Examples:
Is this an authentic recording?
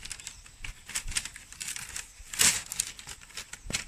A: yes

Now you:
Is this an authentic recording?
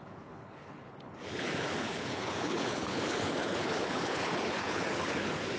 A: no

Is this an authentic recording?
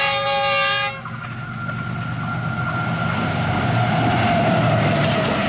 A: yes